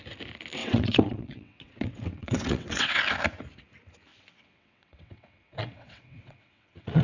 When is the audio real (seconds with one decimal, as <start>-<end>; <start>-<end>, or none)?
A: 0.0-0.6; 3.0-4.1